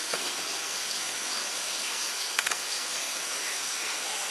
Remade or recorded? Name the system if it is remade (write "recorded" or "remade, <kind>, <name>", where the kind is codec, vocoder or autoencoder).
remade, codec, SNAC